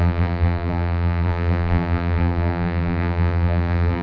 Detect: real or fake fake